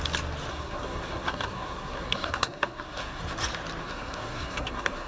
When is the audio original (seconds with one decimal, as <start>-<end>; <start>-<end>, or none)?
0.0-0.5; 3.2-3.8